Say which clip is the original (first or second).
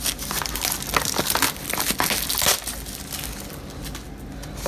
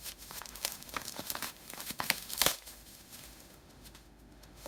first